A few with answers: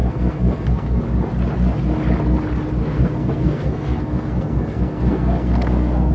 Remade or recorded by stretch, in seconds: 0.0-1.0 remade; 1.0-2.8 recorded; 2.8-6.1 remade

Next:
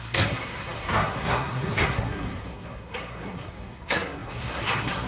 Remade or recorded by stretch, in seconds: 0.0-5.1 remade

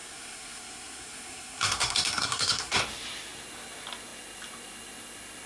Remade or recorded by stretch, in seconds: 0.0-2.8 remade; 2.8-5.5 recorded

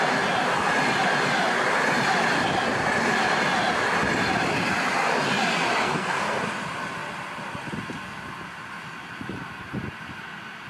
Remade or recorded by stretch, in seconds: 0.0-5.8 recorded; 5.8-6.4 remade; 6.4-10.7 recorded

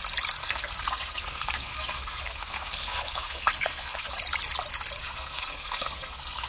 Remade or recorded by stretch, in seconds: 0.0-0.4 recorded; 0.4-4.1 remade; 4.1-5.0 recorded; 5.0-6.5 remade

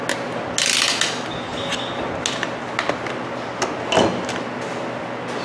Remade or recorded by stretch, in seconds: 0.0-5.4 recorded